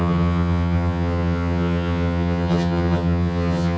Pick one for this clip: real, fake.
fake